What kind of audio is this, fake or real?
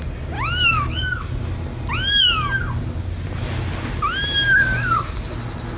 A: real